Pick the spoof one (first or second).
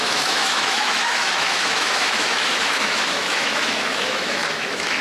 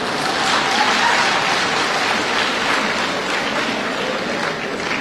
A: first